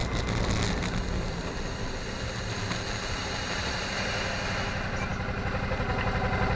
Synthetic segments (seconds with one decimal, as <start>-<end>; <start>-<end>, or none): none